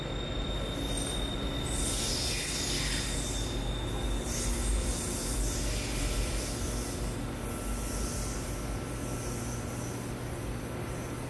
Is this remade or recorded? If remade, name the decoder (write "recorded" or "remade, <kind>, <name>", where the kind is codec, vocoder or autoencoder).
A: recorded